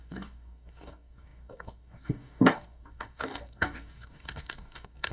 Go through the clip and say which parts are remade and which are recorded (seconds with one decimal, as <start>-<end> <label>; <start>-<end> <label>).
0.0-5.1 remade